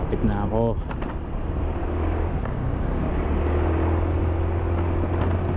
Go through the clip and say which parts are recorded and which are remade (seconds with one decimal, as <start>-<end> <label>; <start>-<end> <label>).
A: 0.0-1.8 recorded; 1.8-3.1 remade; 3.1-5.6 recorded